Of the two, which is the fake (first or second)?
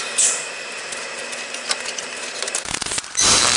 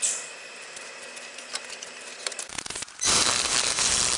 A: second